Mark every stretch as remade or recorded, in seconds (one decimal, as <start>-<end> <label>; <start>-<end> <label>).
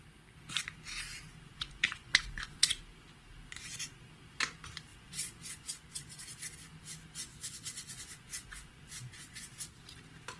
0.0-1.5 recorded; 1.5-2.8 remade; 2.8-4.9 recorded; 4.9-6.2 remade; 6.2-7.2 recorded; 7.2-9.5 remade; 9.5-10.4 recorded